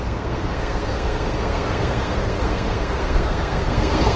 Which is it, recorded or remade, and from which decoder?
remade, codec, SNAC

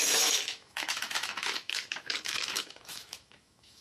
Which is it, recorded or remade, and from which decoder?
remade, autoencoder, DAC-VAE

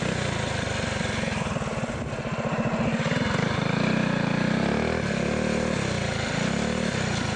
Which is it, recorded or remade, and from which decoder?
recorded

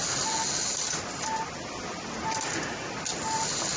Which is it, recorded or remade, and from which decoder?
recorded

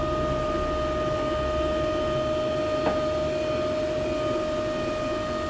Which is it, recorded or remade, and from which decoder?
recorded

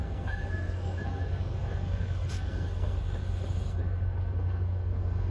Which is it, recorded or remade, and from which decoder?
remade, codec, SNAC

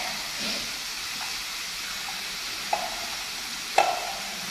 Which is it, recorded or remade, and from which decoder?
recorded